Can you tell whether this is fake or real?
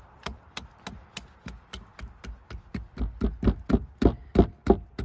real